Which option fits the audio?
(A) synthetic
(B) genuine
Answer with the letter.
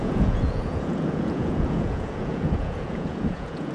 A